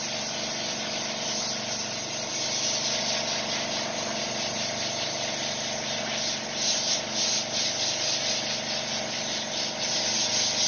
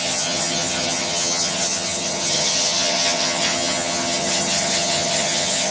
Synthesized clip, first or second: second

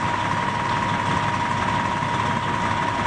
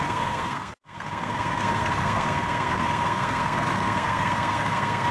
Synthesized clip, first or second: second